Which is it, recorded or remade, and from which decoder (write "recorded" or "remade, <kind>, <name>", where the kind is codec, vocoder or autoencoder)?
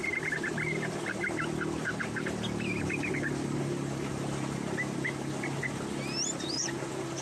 recorded